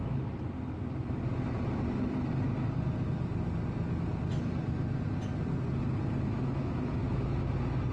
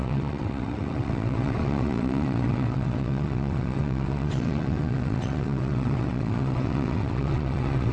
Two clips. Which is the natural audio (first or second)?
first